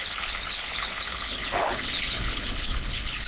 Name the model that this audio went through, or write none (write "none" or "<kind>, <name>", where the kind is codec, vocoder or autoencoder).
codec, HILCodec